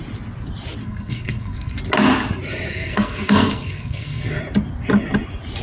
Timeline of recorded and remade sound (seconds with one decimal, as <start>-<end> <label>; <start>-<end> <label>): 0.0-0.8 recorded; 0.8-1.8 remade; 1.8-2.7 recorded; 2.7-4.4 remade; 4.4-5.6 recorded